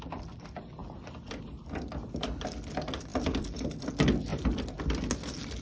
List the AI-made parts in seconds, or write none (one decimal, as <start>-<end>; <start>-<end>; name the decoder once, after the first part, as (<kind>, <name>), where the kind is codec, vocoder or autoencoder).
3.1-3.9 (vocoder, BigVGAN v2)